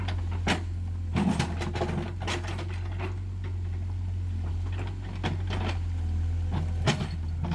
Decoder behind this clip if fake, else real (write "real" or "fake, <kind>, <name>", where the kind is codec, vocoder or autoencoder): real